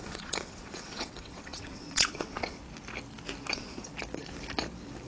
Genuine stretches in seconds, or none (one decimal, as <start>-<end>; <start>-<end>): 2.6-3.5; 3.9-5.1